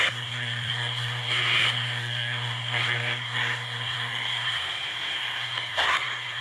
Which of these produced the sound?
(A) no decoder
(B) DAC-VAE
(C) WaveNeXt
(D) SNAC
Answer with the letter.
D